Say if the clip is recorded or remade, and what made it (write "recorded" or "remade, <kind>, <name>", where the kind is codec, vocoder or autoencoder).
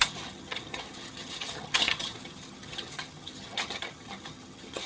remade, vocoder, HiFi-GAN